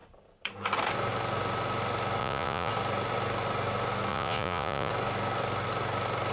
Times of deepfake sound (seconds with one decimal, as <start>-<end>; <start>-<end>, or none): 2.2-2.7; 4.1-4.9